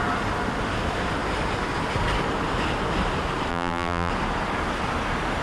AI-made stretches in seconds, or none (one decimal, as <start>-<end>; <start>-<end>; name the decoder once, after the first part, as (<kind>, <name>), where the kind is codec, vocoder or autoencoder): 3.5-4.1 (vocoder, BigVGAN v2)

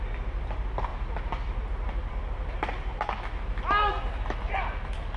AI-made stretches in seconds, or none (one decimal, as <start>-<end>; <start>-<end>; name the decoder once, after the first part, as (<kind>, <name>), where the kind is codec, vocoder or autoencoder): none

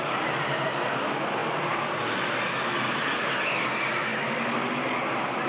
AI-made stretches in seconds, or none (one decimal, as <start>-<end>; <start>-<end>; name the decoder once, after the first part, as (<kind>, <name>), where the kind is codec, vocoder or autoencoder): 1.4-1.9 (vocoder, BigVGAN v2)

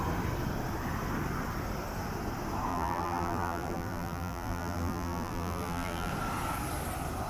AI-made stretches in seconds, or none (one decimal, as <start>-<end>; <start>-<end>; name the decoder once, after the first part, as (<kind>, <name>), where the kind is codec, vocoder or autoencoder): 2.7-6.1 (vocoder, BigVGAN v2)

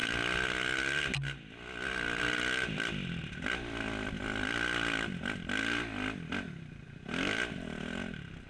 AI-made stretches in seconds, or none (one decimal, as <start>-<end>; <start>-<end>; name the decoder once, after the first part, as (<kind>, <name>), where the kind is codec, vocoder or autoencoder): none

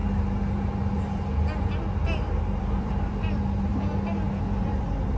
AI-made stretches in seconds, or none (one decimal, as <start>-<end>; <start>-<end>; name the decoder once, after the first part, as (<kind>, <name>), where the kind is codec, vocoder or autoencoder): 1.6-3.7 (vocoder, BigVGAN v2); 4.6-5.2